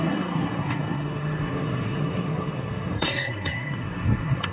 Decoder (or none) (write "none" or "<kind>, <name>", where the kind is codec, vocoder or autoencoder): codec, SNAC